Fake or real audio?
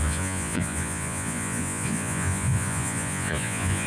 fake